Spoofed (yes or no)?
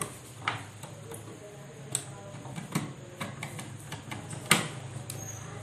no